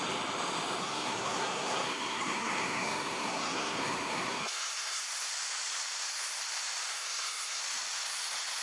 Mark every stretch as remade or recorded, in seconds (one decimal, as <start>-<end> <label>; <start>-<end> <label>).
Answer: 0.0-0.8 recorded; 0.8-5.0 remade; 5.0-6.9 recorded; 6.9-7.6 remade; 7.6-8.6 recorded